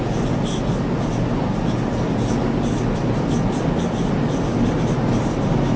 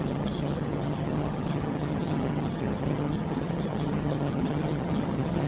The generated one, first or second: second